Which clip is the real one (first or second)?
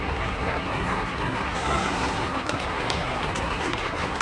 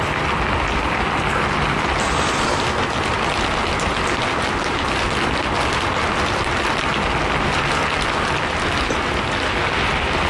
second